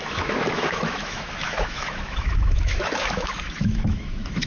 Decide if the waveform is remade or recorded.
remade